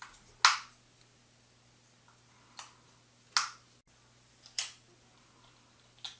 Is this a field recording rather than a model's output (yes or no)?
yes